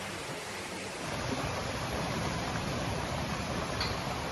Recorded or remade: remade